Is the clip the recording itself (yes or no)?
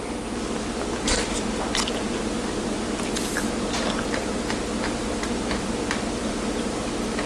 yes